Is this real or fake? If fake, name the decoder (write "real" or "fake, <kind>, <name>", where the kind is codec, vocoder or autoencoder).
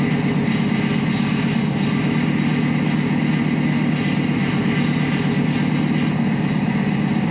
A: real